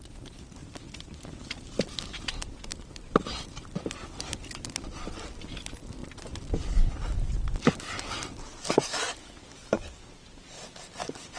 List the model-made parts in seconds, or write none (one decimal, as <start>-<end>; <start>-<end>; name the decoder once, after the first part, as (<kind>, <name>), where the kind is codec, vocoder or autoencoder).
0.6-2.1 (vocoder, BigVGAN v2); 6.0-6.9